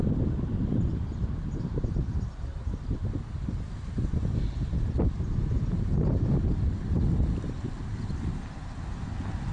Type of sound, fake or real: real